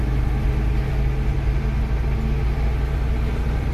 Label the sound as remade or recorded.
recorded